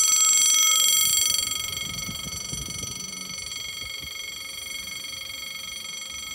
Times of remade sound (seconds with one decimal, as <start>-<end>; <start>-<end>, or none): none